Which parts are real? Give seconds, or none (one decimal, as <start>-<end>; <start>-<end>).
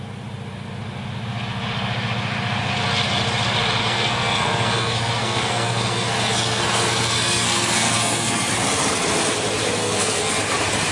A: 0.0-3.8; 8.5-9.8; 10.4-10.9